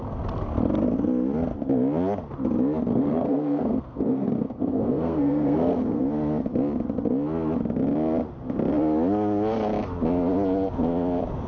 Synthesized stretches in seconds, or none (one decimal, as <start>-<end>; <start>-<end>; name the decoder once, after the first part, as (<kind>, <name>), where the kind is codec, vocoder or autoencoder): 2.9-6.0 (codec, SNAC)